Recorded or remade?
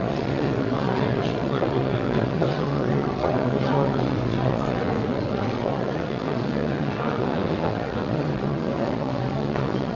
remade